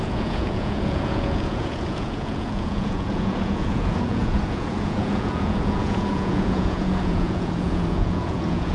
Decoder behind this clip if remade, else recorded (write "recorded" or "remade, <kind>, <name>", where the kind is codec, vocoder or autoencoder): remade, vocoder, Vocos